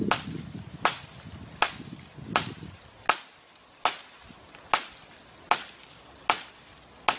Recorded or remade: recorded